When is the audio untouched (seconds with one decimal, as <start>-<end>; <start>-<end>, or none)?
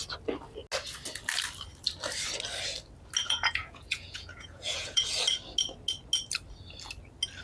0.0-3.2; 5.1-7.4